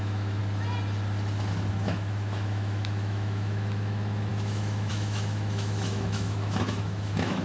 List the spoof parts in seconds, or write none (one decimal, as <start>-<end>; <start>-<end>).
0.0-0.4; 1.7-7.4